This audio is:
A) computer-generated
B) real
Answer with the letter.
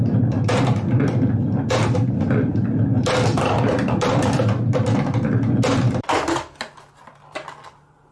A